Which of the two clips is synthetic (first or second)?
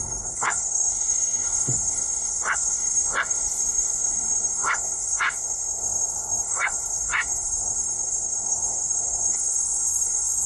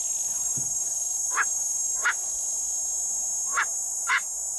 first